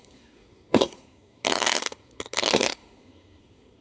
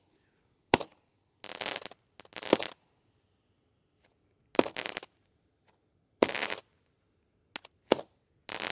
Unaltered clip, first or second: second